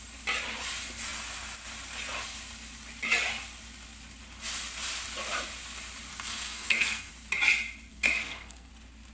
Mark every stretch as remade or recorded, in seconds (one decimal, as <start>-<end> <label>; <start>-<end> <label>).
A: 0.0-6.1 recorded; 6.1-7.1 remade; 7.1-7.9 recorded; 7.9-8.7 remade; 8.7-9.1 recorded